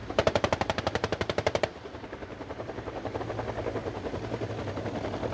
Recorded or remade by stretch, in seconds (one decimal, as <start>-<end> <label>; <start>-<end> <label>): 0.0-3.2 remade; 3.2-3.8 recorded; 3.8-4.5 remade; 4.5-5.3 recorded